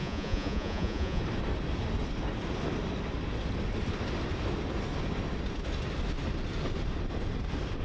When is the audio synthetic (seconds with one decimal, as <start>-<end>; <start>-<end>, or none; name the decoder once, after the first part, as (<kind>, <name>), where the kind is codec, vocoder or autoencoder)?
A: 0.0-1.2 (vocoder, Vocos)